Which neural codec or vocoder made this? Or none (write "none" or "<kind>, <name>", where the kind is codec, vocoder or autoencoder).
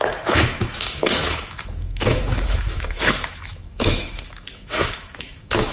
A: autoencoder, DAC-VAE